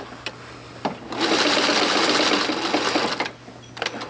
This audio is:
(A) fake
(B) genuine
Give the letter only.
B